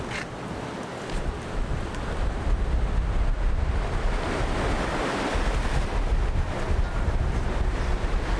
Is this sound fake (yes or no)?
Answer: no